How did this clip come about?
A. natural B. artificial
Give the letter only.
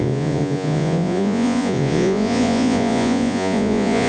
B